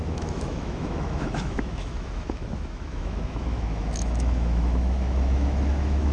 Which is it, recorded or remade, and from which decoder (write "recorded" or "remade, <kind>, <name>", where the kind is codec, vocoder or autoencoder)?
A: remade, autoencoder, DAC-VAE